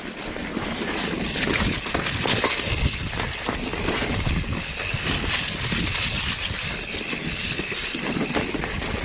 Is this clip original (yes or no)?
yes